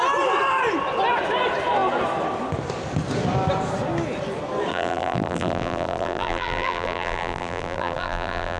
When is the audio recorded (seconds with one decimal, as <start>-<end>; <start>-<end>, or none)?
0.0-4.7